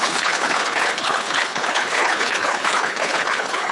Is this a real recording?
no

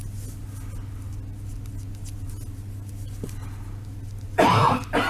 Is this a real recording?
yes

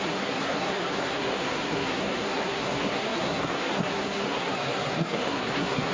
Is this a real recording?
no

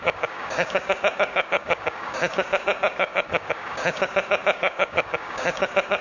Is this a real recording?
no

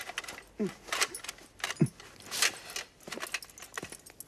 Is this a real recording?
yes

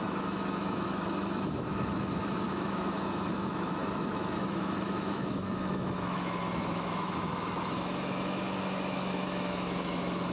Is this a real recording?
no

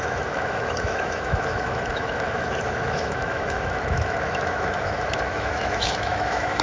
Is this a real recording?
no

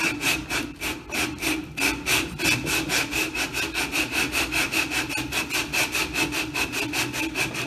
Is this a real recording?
yes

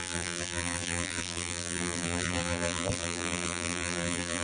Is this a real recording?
no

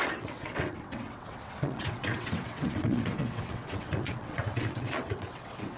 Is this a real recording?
no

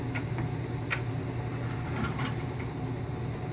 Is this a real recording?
yes